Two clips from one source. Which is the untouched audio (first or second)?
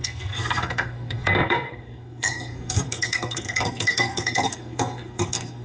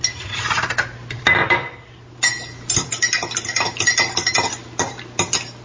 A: second